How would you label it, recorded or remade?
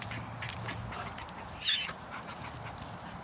recorded